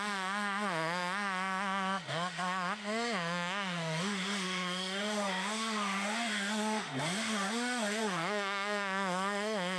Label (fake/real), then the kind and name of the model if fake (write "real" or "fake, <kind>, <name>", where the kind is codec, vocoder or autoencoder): fake, autoencoder, DAC-VAE